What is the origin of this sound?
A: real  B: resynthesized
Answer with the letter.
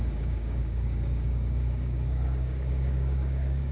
B